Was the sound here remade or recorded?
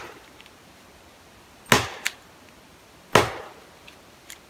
recorded